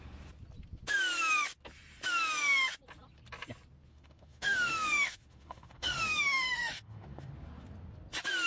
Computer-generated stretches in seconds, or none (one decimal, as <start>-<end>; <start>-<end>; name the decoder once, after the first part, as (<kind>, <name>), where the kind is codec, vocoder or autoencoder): 3.9-7.3 (autoencoder, DAC-VAE)